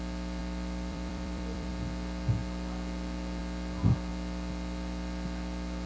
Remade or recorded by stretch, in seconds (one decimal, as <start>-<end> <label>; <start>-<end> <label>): 0.0-0.4 recorded; 0.4-1.7 remade; 1.7-5.9 recorded